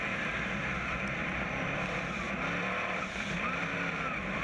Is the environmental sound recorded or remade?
remade